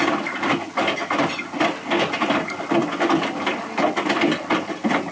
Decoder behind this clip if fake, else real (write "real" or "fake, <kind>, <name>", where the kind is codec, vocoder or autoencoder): real